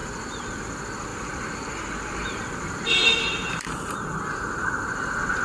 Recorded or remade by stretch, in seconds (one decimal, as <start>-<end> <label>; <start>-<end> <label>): 0.0-0.6 remade; 0.6-1.1 recorded; 1.1-4.3 remade; 4.3-5.4 recorded